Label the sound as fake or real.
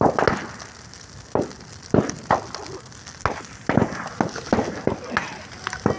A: real